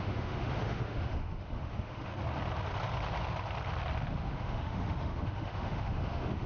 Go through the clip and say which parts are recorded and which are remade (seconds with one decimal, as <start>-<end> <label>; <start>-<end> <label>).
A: 0.0-2.1 remade; 2.1-4.1 recorded; 4.1-6.5 remade